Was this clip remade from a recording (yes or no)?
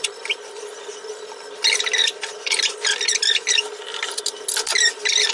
no